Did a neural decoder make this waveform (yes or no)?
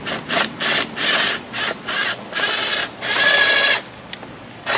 no